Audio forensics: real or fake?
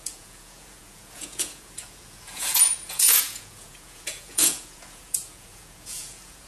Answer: fake